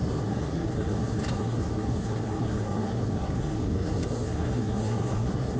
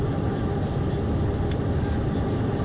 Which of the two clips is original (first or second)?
second